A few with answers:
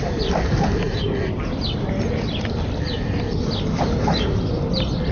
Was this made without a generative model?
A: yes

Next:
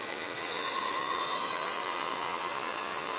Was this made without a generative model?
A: no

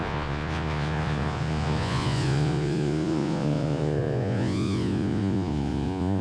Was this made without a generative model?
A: no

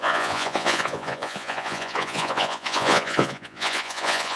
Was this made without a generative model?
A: no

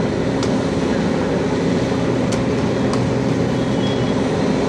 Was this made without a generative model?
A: yes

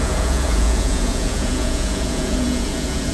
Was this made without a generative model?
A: no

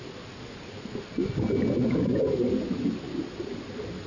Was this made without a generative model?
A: yes